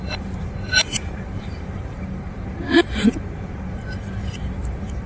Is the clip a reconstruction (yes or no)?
yes